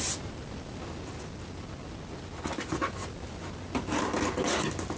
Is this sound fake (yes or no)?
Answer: no